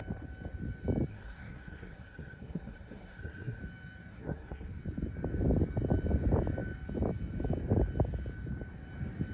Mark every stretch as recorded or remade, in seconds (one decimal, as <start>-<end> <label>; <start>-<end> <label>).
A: 0.0-1.1 recorded; 1.1-3.6 remade; 3.6-4.1 recorded; 4.1-4.8 remade; 4.8-9.3 recorded